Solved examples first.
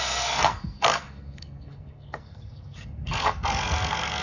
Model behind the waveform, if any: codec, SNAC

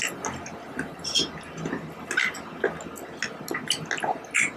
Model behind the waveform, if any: none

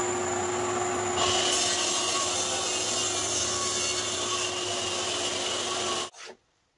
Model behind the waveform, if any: none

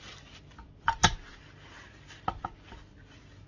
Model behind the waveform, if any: none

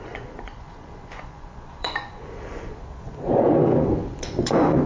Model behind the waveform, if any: vocoder, Vocos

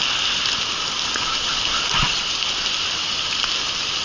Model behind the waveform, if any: none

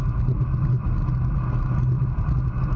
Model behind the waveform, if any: none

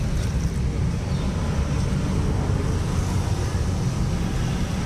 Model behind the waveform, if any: none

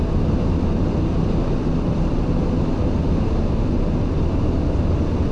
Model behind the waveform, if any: none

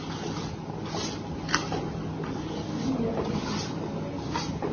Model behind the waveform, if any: none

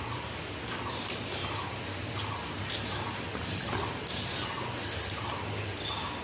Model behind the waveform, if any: none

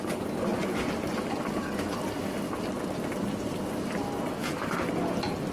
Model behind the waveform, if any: none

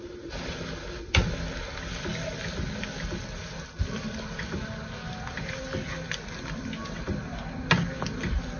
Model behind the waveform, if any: none